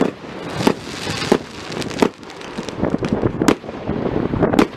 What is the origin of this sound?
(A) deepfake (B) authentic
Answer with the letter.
B